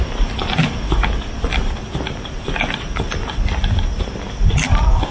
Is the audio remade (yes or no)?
no